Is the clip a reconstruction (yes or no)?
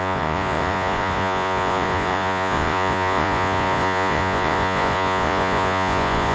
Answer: yes